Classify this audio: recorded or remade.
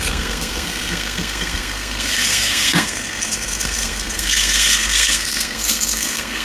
remade